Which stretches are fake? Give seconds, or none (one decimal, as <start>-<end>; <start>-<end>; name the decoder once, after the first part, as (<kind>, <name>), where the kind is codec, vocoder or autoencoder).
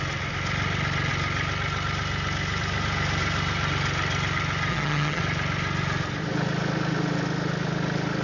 4.7-5.2 (vocoder, HiFi-GAN)